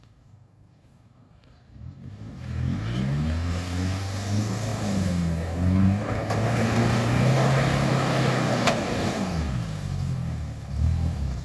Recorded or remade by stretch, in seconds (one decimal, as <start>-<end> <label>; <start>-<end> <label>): 0.0-11.4 remade